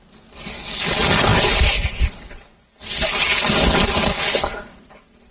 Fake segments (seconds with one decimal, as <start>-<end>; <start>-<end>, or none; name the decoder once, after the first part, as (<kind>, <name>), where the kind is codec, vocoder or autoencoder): none